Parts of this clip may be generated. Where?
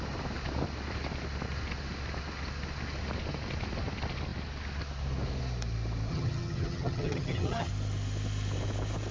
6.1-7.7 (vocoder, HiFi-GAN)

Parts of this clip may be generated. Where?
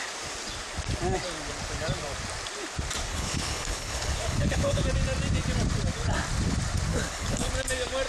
3.1-4.8 (codec, HILCodec); 6.9-7.5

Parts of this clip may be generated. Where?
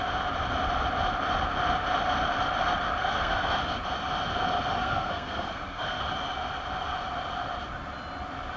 3.0-3.6 (codec, SNAC); 4.8-6.0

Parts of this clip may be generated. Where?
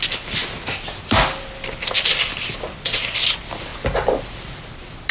0.4-2.8 (vocoder, BigVGAN v2)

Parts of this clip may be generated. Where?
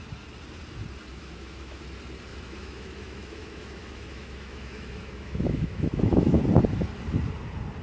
1.1-1.8 (autoencoder, DAC-VAE); 2.3-6.4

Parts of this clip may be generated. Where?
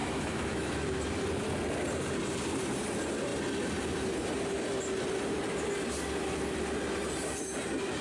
0.0-0.7 (autoencoder, DAC-VAE)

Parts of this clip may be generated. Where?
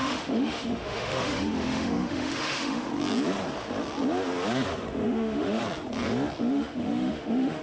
0.0-2.9 (autoencoder, DAC-VAE); 4.9-5.6; 6.4-7.6